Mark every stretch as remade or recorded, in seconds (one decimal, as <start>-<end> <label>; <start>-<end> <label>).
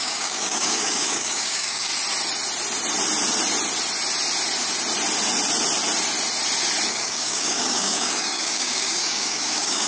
0.0-1.9 remade; 1.9-6.9 recorded; 6.9-9.9 remade